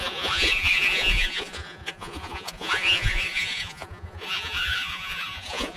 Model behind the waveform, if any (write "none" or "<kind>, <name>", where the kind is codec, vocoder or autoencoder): vocoder, Vocos